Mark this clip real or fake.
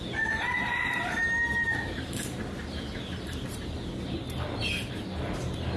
real